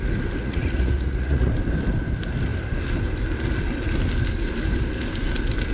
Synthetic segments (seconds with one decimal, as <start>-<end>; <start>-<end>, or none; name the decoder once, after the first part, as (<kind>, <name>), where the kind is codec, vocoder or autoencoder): 0.4-1.5 (vocoder, Vocos)